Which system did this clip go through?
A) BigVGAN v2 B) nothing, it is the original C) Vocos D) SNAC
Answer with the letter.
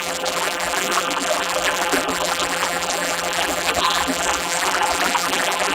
A